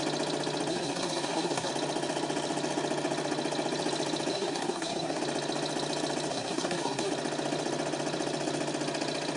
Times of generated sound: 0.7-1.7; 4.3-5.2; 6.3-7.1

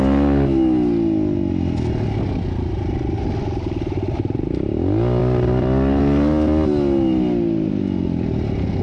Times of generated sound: 5.2-6.0

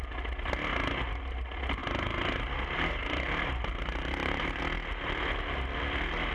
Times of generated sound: 1.8-4.6